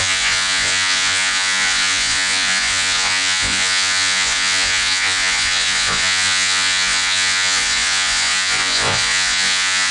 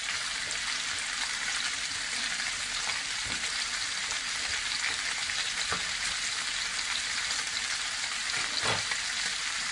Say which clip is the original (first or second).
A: second